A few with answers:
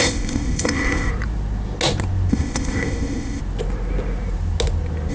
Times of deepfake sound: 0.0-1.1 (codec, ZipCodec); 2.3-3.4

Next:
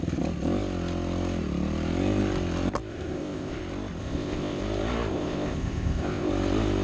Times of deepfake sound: 2.9-3.6 (codec, ZipCodec); 4.0-4.6; 5.1-6.3